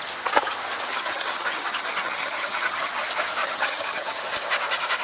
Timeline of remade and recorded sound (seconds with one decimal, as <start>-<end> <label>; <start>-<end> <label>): 0.0-0.9 recorded; 0.9-2.9 remade; 2.9-3.4 recorded; 3.4-4.2 remade; 4.2-5.0 recorded